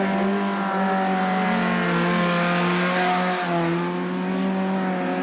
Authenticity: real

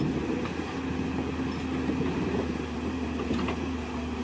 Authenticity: real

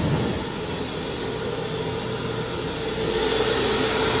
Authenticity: real